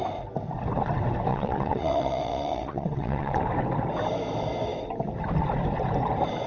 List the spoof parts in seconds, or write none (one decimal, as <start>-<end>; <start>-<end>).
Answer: 1.3-3.4